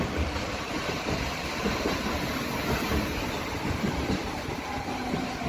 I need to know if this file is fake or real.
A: fake